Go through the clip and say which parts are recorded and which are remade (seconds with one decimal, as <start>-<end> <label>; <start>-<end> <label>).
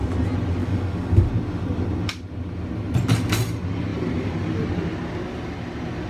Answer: 0.0-0.6 recorded; 0.6-1.3 remade; 1.3-6.1 recorded